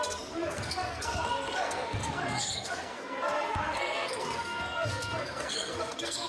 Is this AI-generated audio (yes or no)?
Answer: yes